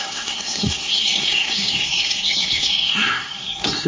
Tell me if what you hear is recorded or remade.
remade